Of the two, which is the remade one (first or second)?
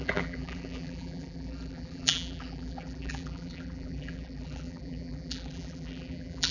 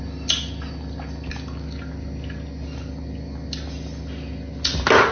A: first